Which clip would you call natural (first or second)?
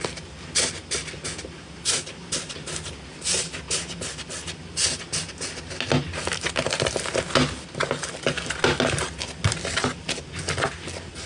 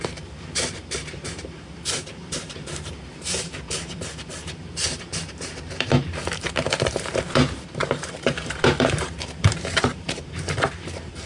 first